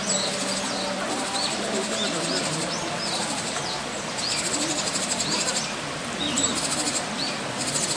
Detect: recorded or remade recorded